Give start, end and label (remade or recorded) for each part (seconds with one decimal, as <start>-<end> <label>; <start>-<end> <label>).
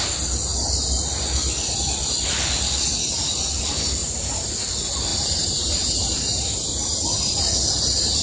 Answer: 0.0-4.0 recorded; 4.0-4.5 remade; 4.5-5.1 recorded; 5.1-7.4 remade; 7.4-8.2 recorded